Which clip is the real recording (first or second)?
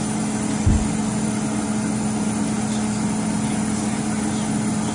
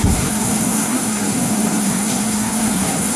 first